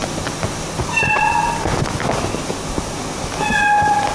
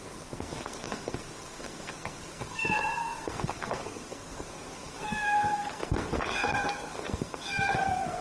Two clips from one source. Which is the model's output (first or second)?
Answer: second